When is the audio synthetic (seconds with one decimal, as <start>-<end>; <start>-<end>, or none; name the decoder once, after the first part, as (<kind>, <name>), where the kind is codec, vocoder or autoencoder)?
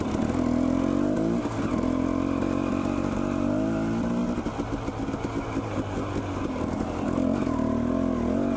none